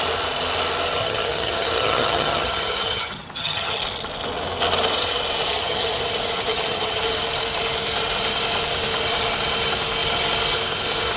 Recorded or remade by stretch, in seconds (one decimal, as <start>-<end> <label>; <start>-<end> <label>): 0.0-1.0 recorded; 1.0-3.8 remade; 3.8-5.5 recorded; 5.5-6.0 remade; 6.0-6.5 recorded; 6.5-7.0 remade; 7.0-11.2 recorded

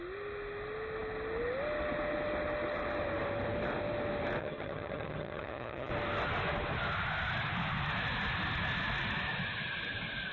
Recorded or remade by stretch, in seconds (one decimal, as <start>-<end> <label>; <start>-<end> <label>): 0.0-4.4 recorded; 4.4-5.9 remade; 5.9-10.3 recorded

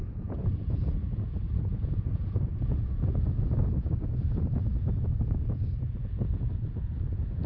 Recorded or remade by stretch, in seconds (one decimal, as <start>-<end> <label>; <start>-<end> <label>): 0.0-7.5 remade

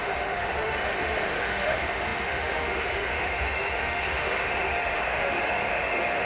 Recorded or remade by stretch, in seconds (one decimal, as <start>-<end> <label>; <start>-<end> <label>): 0.0-6.3 remade

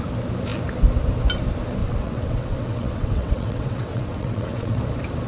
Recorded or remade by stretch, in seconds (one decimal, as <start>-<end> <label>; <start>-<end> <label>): 0.0-1.8 recorded; 1.8-4.8 remade; 4.8-5.3 recorded

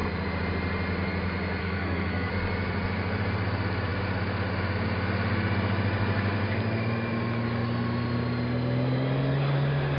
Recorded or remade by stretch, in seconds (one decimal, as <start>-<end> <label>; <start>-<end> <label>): 0.0-1.6 recorded; 1.6-2.3 remade; 2.3-10.0 recorded